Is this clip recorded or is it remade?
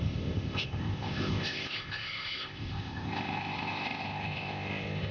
remade